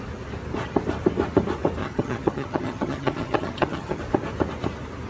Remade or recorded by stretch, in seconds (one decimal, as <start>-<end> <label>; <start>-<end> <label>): 0.0-1.8 recorded; 1.8-4.0 remade; 4.0-5.1 recorded